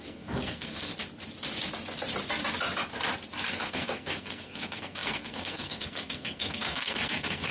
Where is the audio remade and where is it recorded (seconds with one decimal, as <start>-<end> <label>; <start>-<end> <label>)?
0.0-0.9 remade; 0.9-3.5 recorded; 3.5-7.5 remade

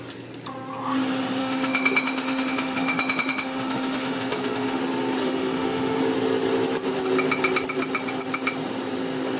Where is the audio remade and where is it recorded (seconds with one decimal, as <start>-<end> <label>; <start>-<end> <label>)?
0.0-1.4 recorded; 1.4-4.8 remade; 4.8-5.2 recorded; 5.2-6.0 remade; 6.0-9.4 recorded

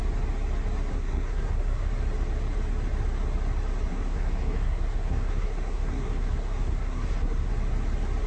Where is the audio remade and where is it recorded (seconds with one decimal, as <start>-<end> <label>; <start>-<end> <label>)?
0.0-0.9 recorded; 0.9-1.9 remade; 1.9-3.9 recorded; 3.9-7.5 remade; 7.5-8.3 recorded